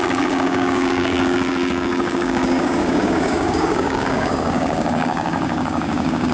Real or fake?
fake